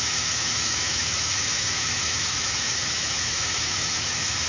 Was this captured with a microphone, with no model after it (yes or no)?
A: no